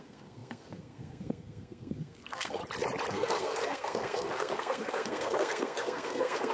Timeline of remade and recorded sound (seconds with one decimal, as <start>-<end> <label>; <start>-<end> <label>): 0.0-2.6 remade; 2.6-3.1 recorded; 3.1-6.5 remade